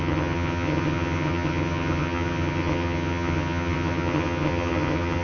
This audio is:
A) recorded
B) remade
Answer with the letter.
B